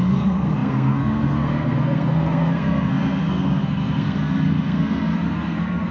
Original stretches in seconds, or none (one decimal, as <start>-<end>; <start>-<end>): none